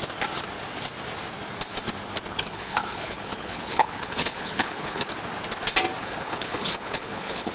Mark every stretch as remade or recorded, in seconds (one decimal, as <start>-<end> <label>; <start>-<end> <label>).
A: 0.0-2.3 recorded; 2.3-5.1 remade; 5.1-6.0 recorded; 6.0-7.5 remade